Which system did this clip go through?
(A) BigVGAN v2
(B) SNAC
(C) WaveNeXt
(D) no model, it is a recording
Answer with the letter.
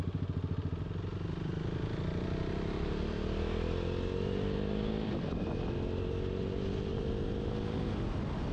D